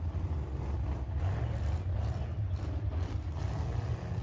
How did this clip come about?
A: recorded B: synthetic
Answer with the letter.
A